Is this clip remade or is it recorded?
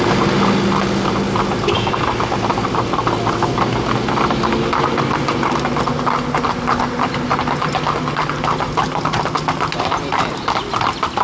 recorded